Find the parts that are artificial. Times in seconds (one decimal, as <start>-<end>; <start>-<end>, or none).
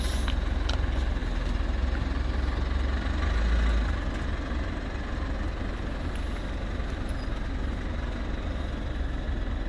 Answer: none